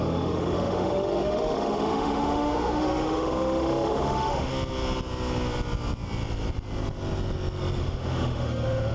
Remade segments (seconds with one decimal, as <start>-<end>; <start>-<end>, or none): 0.0-4.5; 7.8-8.9